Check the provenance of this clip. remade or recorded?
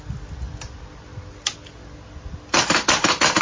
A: recorded